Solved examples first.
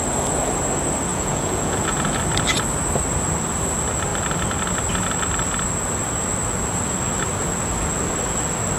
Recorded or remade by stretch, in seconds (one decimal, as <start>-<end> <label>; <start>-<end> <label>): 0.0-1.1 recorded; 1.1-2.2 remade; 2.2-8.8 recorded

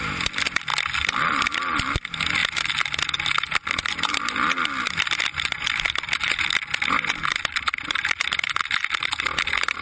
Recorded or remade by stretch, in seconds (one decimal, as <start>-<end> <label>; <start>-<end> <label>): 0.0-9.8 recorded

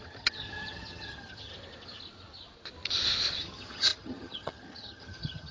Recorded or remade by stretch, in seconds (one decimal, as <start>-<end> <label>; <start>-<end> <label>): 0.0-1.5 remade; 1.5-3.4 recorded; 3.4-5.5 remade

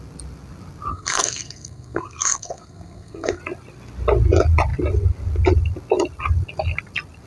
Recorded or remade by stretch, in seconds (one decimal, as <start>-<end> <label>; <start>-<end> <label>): 0.0-0.9 recorded; 0.9-3.4 remade; 3.4-7.3 recorded

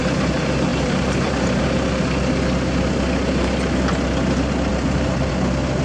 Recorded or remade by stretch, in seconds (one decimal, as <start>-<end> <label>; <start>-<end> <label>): 0.0-0.7 recorded; 0.7-1.6 remade; 1.6-4.7 recorded; 4.7-5.3 remade; 5.3-5.8 recorded

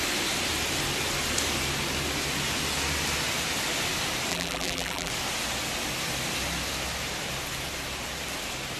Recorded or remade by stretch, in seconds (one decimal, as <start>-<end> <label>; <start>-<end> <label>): 0.0-4.3 recorded; 4.3-5.1 remade; 5.1-8.8 recorded